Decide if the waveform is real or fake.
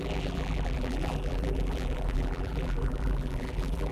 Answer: fake